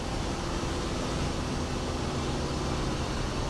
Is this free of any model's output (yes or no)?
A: yes